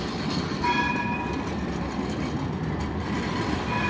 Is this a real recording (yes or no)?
yes